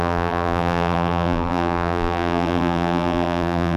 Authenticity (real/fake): fake